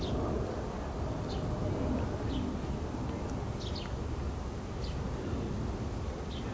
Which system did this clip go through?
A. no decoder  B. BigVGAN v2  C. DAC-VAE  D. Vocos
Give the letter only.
A